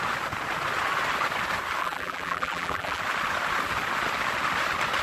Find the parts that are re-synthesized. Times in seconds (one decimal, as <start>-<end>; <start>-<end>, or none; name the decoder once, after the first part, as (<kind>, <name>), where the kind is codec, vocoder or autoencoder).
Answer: 1.8-3.0 (vocoder, BigVGAN v2)